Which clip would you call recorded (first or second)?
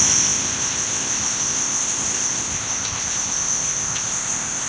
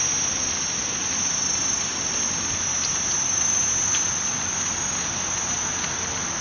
second